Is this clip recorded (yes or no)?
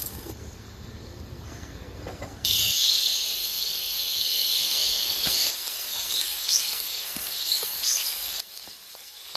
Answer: no